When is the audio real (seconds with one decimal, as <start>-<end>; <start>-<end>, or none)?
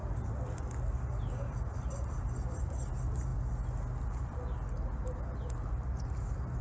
0.0-6.6